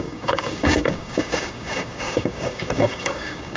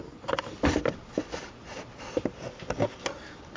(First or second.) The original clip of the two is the second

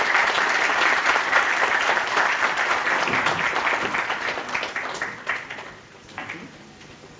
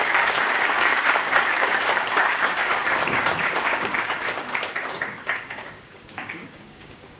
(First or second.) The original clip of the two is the first